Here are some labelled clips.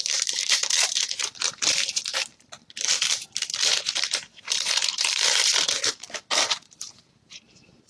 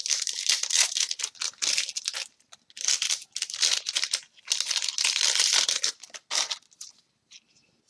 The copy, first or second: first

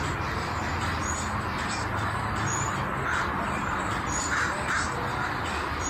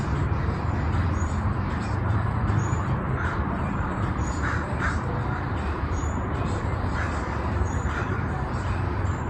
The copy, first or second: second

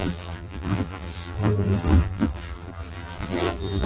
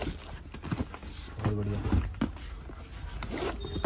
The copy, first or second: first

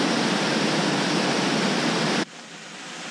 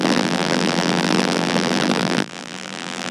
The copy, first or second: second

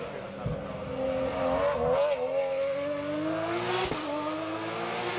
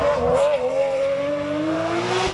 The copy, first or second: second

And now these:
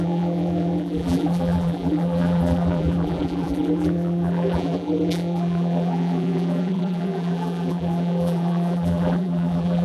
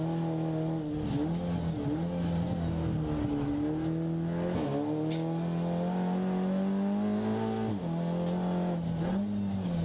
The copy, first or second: first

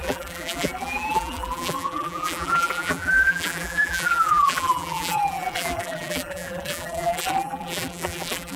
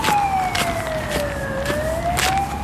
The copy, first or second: first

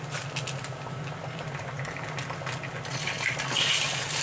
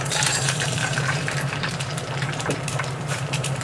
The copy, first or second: second